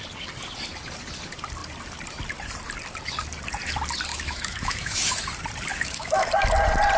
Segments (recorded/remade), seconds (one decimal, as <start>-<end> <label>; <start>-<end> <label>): 0.0-4.1 recorded; 4.1-5.2 remade; 5.2-5.7 recorded; 5.7-6.3 remade; 6.3-7.0 recorded

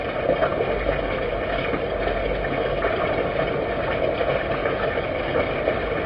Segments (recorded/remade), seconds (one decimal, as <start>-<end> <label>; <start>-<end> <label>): 0.0-4.6 recorded; 4.6-5.1 remade; 5.1-6.1 recorded

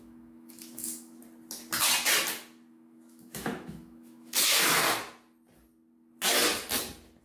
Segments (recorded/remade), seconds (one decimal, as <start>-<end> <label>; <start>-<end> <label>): 0.0-1.2 remade; 1.2-2.7 recorded; 2.7-4.7 remade; 4.7-7.2 recorded

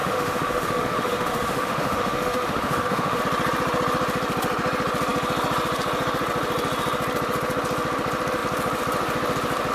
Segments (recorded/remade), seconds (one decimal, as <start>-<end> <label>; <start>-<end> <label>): 0.0-3.2 remade; 3.2-9.7 recorded

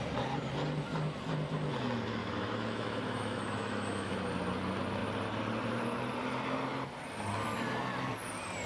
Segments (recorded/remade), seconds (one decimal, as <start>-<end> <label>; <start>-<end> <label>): 0.0-2.2 recorded; 2.2-4.2 remade; 4.2-8.7 recorded

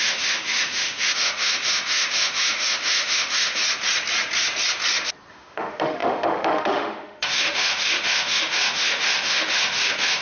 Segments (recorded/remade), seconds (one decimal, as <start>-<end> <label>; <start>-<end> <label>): 0.0-3.6 remade; 3.6-5.3 recorded; 5.3-10.2 remade

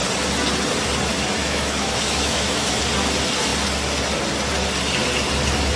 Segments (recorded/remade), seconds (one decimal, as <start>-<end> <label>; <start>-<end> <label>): 0.0-1.4 recorded; 1.4-2.8 remade; 2.8-5.8 recorded